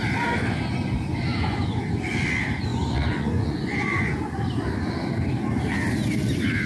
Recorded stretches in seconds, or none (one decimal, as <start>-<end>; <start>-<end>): 0.0-1.3; 1.8-2.7; 4.4-6.7